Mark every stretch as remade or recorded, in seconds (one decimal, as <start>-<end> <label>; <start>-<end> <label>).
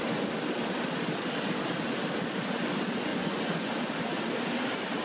0.0-3.1 recorded; 3.1-3.7 remade; 3.7-5.0 recorded